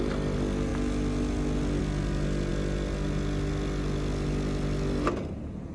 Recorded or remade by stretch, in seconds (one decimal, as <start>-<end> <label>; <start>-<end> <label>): 0.0-5.7 recorded